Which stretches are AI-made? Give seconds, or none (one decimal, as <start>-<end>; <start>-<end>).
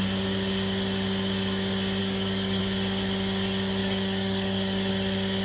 2.0-2.6; 3.8-4.9